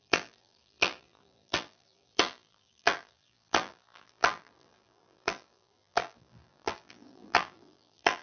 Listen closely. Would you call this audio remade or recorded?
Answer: remade